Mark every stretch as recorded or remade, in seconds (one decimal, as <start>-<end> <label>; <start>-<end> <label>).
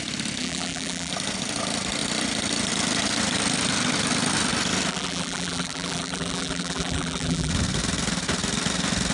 0.0-0.4 recorded; 0.4-1.1 remade; 1.1-4.9 recorded; 4.9-7.5 remade; 7.5-9.1 recorded